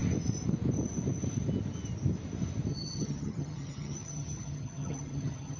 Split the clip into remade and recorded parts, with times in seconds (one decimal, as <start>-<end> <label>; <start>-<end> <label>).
0.0-2.7 recorded; 2.7-5.6 remade